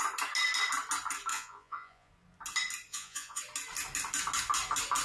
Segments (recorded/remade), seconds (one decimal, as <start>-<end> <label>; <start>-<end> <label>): 0.0-1.3 recorded; 1.3-2.1 remade; 2.1-2.9 recorded; 2.9-3.4 remade; 3.4-5.0 recorded